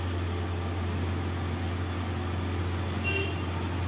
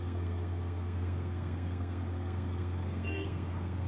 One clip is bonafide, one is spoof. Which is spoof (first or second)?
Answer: second